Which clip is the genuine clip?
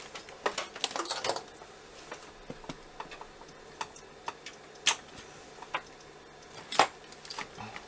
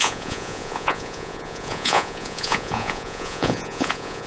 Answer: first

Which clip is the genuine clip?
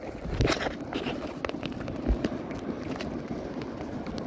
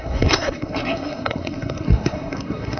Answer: first